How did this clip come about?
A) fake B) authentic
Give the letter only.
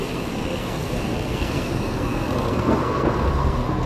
A